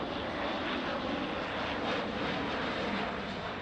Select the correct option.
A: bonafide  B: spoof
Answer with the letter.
A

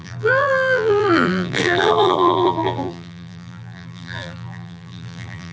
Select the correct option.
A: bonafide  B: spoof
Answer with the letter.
B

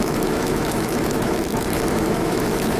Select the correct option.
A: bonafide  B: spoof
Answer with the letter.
B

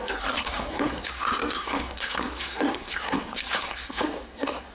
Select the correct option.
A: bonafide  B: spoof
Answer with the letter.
B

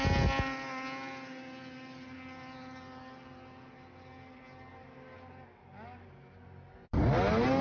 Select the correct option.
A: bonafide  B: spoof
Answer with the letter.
A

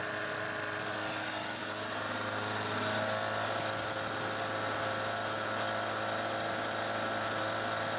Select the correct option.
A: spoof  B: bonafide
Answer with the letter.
B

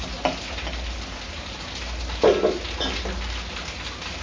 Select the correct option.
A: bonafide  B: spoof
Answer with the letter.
A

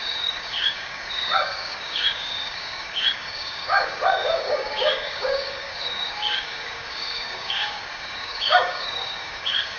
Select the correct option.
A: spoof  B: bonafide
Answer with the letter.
A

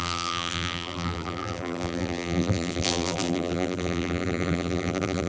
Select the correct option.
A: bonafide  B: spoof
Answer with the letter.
B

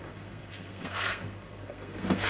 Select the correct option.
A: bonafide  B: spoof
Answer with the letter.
B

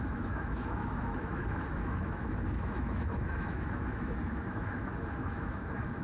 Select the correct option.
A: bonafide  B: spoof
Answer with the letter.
B